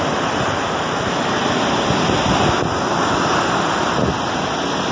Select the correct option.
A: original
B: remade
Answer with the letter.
A